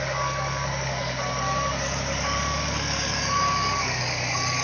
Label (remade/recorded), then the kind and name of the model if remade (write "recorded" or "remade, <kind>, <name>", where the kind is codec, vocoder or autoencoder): remade, codec, DAC